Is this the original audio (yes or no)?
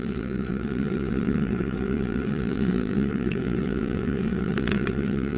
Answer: no